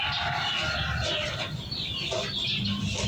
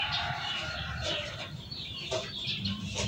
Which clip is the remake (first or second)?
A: second